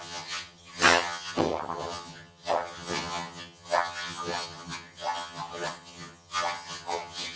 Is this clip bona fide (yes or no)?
no